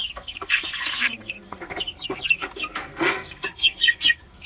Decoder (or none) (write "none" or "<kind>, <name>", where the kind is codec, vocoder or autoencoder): codec, SNAC